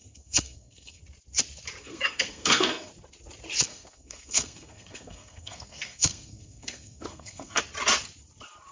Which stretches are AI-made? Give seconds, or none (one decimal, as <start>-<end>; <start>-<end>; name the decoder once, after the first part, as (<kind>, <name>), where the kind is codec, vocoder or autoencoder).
0.0-1.0 (codec, SNAC); 1.8-2.9; 3.7-7.6